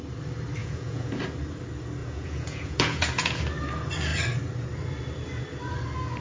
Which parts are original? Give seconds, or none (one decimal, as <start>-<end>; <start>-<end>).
0.0-0.6; 1.2-2.0; 3.4-6.2